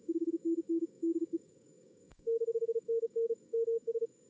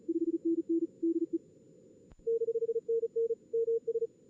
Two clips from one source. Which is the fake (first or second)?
first